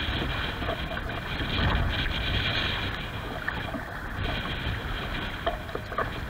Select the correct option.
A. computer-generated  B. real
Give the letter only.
B